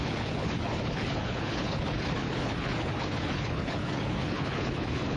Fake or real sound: fake